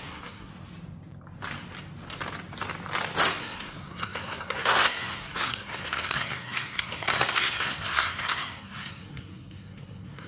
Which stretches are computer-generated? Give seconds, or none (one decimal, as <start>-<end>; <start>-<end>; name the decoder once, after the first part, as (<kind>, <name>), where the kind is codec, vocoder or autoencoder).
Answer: 0.0-0.5 (codec, SNAC); 3.4-10.3